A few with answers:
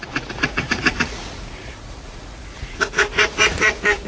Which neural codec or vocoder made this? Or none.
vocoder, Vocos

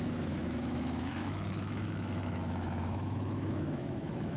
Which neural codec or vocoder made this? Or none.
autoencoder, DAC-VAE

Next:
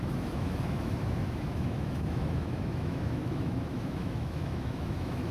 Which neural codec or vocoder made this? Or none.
autoencoder, DAC-VAE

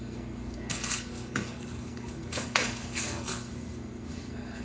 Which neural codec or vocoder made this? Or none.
codec, SNAC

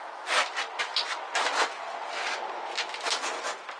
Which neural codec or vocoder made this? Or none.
none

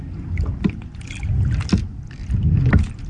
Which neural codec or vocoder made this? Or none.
none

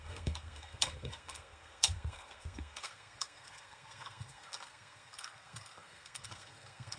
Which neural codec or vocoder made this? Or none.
codec, SNAC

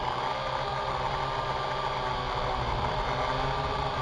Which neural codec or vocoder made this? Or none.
none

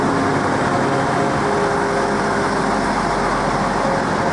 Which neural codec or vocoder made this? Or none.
none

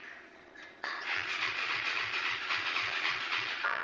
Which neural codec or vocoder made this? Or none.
vocoder, Vocos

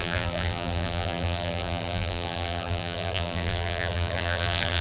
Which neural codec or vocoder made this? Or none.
vocoder, BigVGAN v2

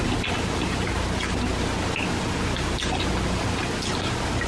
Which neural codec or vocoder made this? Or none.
none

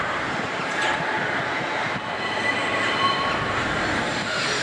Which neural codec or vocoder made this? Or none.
vocoder, BigVGAN v2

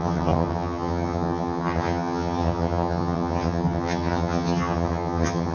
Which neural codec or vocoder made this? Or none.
vocoder, HiFi-GAN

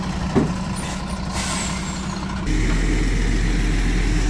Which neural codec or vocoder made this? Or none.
none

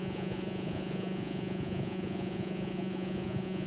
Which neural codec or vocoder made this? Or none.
vocoder, Vocos